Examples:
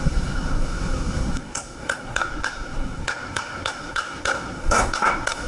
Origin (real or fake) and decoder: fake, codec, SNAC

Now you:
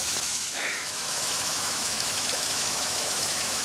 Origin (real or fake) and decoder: fake, autoencoder, DAC-VAE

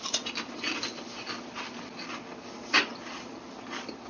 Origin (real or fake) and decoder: real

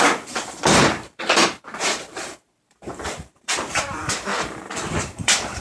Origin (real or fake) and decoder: fake, vocoder, BigVGAN v2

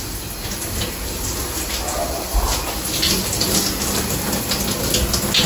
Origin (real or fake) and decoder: real